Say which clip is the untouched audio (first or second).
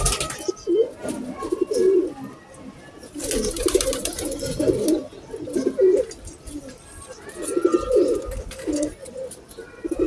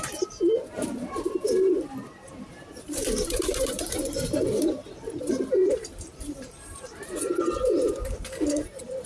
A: first